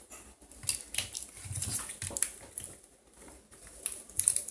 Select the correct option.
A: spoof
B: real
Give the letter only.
B